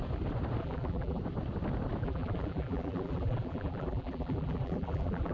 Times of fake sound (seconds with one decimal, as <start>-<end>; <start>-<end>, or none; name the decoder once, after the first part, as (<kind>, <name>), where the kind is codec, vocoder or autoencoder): 0.6-1.2 (vocoder, BigVGAN v2); 2.0-5.3